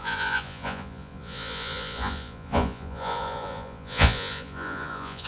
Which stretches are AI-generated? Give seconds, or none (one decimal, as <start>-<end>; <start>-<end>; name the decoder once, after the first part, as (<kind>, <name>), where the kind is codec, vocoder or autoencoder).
0.0-5.3 (vocoder, Vocos)